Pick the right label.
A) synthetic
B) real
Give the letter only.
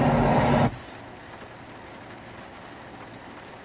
B